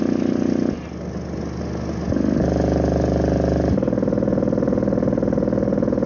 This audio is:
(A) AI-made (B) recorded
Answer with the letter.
B